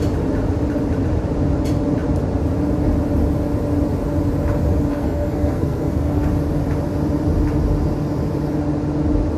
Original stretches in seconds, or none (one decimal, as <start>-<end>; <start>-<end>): 0.0-4.9; 6.3-9.4